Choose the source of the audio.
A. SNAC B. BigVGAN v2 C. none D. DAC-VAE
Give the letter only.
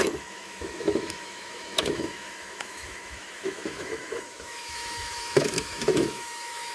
D